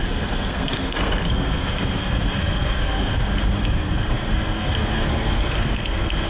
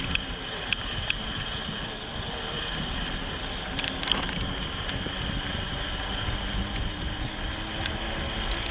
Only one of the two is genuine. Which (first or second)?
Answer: second